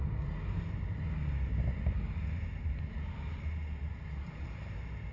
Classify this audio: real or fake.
real